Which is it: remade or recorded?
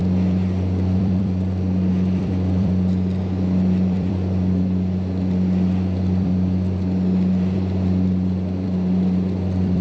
remade